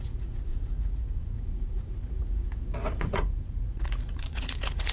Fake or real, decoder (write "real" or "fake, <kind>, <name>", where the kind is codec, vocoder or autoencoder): fake, vocoder, Vocos